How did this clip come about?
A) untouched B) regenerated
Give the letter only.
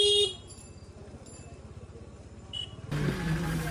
A